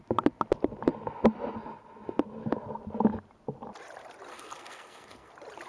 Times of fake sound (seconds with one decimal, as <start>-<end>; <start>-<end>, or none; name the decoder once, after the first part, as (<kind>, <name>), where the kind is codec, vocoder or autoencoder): 4.3-5.3 (codec, SNAC)

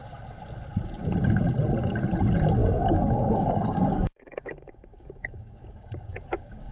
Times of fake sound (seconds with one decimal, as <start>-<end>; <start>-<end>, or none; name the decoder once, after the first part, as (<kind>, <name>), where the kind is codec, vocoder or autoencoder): 2.6-6.7 (codec, DAC)

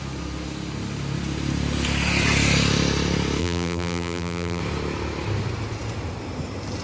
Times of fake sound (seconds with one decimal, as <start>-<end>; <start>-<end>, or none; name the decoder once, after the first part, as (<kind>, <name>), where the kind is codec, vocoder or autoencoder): 3.4-4.6 (vocoder, BigVGAN v2)